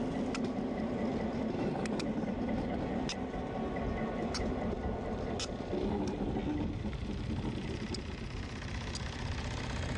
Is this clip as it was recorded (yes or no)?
yes